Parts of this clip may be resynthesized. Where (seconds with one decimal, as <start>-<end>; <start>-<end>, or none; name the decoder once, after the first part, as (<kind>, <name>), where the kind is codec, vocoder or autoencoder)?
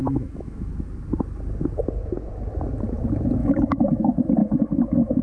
0.0-0.7 (autoencoder, DAC-VAE); 3.4-4.0; 4.4-5.2